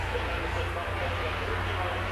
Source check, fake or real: real